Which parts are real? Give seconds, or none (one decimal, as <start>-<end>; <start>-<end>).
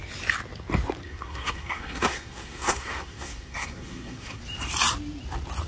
0.0-1.0; 4.4-5.7